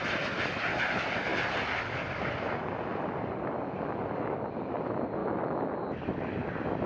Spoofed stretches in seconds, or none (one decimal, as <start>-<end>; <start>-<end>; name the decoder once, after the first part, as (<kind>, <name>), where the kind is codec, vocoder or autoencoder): 5.2-5.7 (autoencoder, DAC-VAE)